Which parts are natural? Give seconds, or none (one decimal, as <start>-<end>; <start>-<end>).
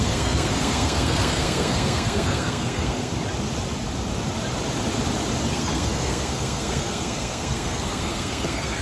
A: 3.1-5.5